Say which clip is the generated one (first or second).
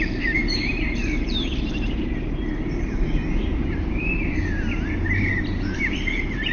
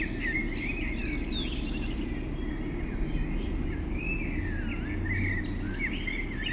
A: first